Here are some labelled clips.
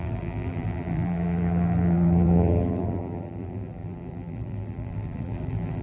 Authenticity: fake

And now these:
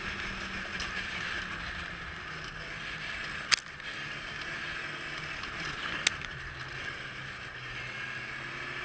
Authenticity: real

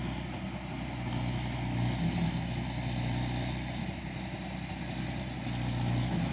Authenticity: real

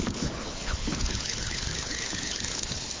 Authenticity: fake